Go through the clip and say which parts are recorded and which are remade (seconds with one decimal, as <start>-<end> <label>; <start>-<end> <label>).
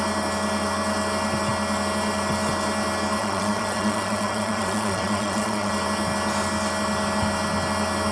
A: 0.0-3.2 recorded; 3.2-5.7 remade; 5.7-8.1 recorded